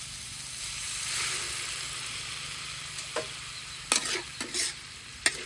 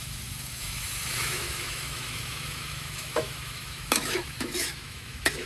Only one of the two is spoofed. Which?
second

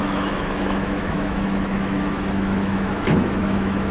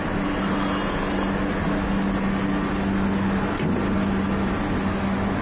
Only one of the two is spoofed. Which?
first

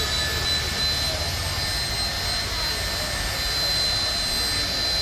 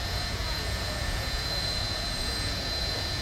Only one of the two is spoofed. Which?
second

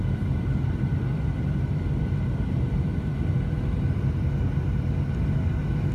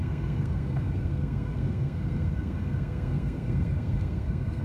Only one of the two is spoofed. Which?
second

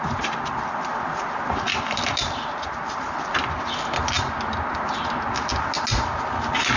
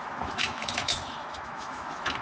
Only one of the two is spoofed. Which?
second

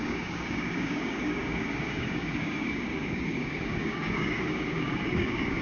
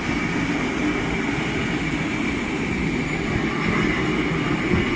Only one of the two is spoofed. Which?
first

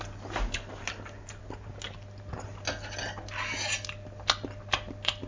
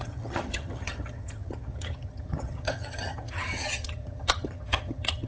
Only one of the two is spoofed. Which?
second